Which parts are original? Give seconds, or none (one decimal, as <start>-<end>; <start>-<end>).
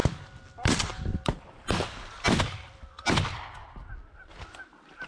3.1-5.1